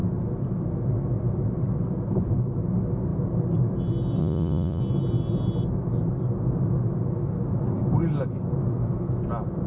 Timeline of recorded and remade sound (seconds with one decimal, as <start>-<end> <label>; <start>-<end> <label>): 0.0-4.2 recorded; 4.2-4.8 remade; 4.8-9.7 recorded